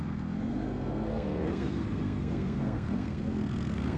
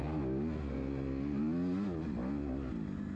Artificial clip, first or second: first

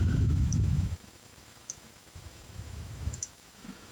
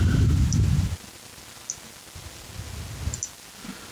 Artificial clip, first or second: first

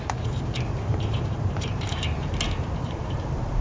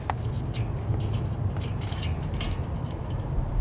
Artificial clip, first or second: first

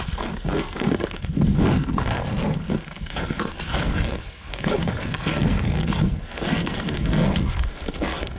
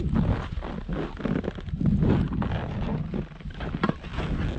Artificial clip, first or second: first